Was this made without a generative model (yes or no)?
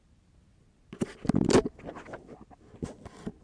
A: yes